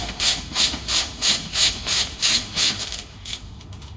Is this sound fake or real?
fake